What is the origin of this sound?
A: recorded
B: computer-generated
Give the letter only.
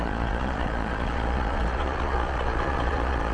B